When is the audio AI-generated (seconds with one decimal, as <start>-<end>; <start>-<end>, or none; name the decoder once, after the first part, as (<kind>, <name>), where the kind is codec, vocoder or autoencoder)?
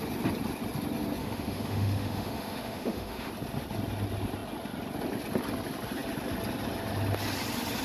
1.2-3.3 (autoencoder, DAC-VAE)